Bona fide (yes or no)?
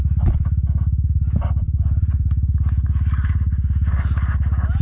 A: yes